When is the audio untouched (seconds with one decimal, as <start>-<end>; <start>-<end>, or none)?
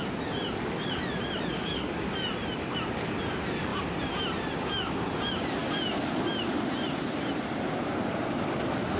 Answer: 0.0-1.5; 2.0-9.0